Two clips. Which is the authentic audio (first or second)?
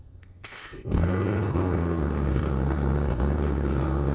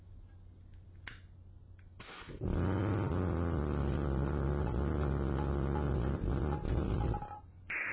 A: second